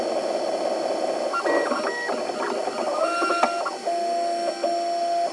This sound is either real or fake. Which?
real